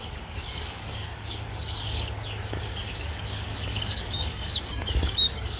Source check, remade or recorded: remade